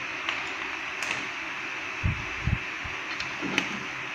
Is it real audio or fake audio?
real